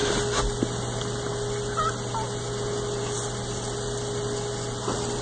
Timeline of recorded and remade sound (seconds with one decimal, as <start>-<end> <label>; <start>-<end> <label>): 0.0-5.2 recorded